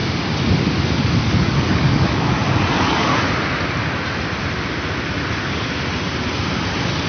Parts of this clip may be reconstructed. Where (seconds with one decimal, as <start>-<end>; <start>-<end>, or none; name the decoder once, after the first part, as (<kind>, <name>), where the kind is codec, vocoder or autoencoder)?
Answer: 1.2-3.1 (codec, DAC)